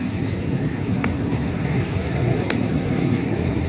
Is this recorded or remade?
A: remade